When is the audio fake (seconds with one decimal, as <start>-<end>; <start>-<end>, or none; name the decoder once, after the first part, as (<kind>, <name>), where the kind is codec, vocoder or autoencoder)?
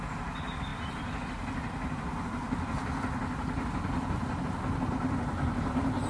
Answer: 0.7-4.4 (vocoder, BigVGAN v2)